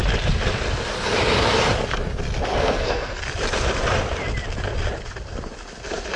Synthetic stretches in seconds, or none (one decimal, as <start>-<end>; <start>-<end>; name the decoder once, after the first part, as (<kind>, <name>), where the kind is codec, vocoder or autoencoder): 2.5-3.2 (codec, SNAC)